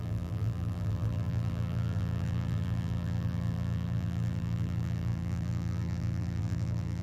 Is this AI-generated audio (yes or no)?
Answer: yes